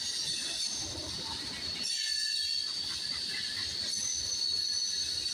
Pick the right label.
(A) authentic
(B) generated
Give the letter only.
A